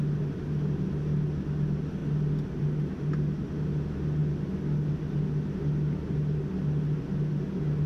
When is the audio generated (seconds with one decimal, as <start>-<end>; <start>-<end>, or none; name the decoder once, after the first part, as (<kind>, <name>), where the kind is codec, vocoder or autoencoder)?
none